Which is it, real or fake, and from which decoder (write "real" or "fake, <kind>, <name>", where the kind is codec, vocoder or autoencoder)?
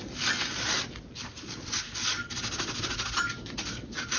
real